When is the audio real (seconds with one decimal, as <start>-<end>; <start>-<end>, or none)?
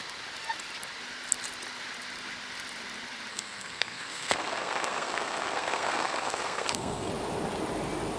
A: 0.0-3.3; 7.1-8.2